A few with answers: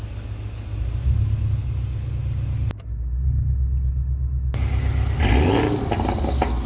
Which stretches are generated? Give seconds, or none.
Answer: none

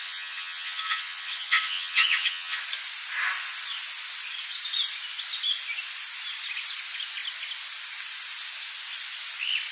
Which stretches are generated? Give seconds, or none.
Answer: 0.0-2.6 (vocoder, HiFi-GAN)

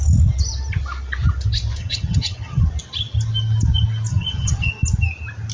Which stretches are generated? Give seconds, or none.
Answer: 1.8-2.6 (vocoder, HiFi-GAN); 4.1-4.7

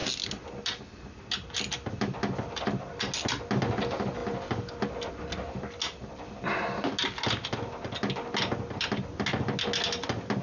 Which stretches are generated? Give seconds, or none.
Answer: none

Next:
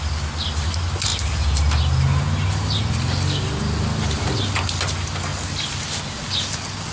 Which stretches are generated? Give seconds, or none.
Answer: none